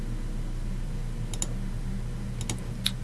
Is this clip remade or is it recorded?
recorded